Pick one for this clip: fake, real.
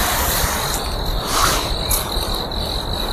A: real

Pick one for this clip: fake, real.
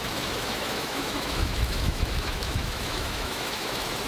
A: fake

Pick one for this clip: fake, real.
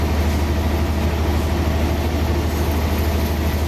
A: real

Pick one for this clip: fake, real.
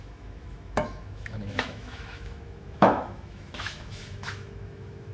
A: fake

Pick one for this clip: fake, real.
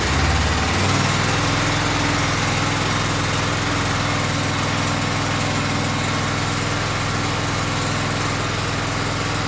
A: real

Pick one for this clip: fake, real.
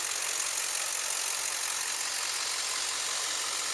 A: real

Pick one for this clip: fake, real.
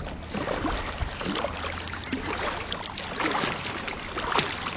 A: real